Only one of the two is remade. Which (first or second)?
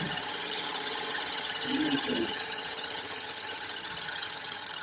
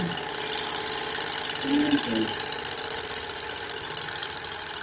first